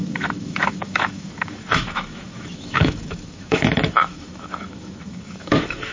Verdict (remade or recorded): remade